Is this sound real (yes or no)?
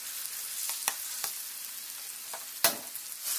yes